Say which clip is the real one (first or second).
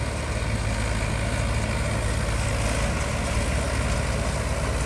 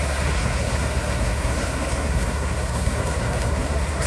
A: first